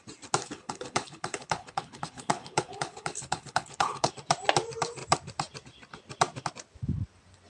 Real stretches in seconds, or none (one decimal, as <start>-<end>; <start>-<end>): 0.0-0.4; 4.1-7.5